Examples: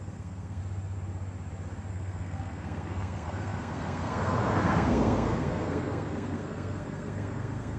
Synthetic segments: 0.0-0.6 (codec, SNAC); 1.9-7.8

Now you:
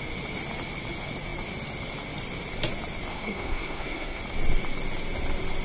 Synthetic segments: 3.1-4.2 (codec, SNAC)

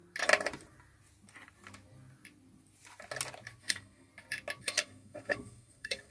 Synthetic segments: 3.6-4.1 (codec, SNAC); 4.6-6.1

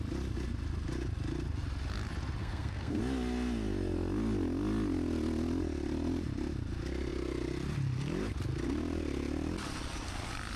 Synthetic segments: 2.4-3.0 (codec, SNAC)